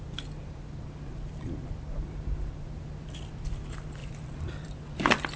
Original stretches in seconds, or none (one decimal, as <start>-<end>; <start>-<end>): 0.0-0.4; 3.6-4.0; 4.7-5.4